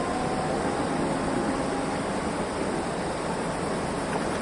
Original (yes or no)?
yes